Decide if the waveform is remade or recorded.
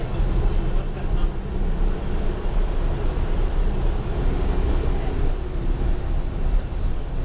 recorded